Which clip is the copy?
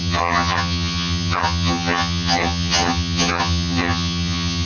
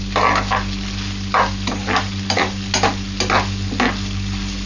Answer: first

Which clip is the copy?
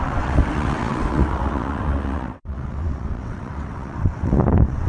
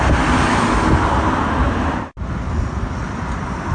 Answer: first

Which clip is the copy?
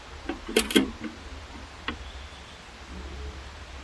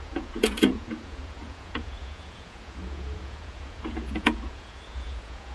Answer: second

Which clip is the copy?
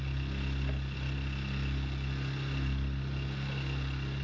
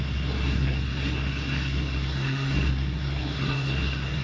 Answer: second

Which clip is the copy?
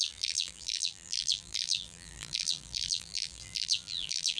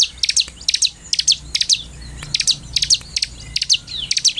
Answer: first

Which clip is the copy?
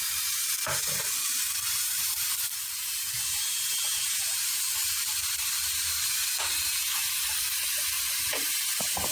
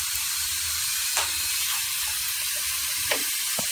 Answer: second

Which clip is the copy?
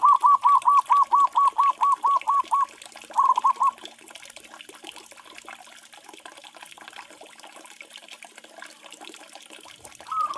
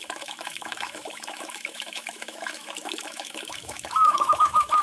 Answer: second